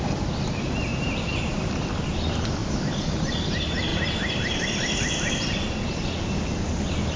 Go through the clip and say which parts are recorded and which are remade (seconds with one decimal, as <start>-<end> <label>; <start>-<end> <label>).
0.0-0.9 recorded; 0.9-1.9 remade; 1.9-3.9 recorded; 3.9-4.6 remade; 4.6-7.2 recorded